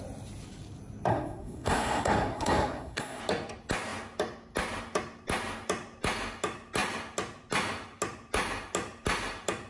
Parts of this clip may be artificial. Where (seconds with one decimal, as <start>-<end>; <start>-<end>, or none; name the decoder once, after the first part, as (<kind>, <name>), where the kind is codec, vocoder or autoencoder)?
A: 1.1-3.2 (codec, SNAC)